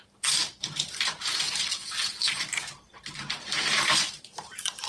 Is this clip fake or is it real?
fake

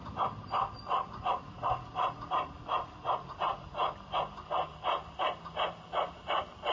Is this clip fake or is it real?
real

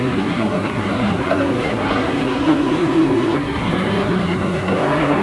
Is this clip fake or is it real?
fake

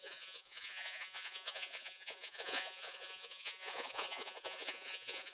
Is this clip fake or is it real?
fake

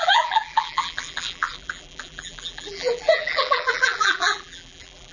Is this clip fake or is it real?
fake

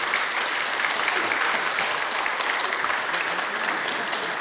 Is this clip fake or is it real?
real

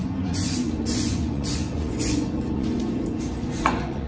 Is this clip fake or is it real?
fake